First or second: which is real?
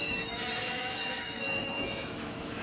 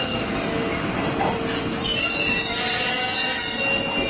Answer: second